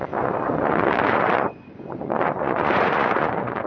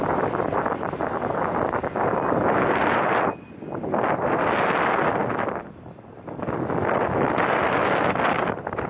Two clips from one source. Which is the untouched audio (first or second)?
second